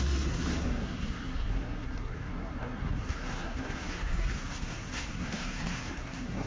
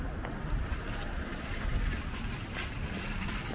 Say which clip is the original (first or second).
second